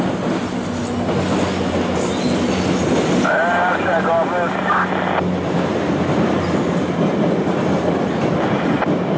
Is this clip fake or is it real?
real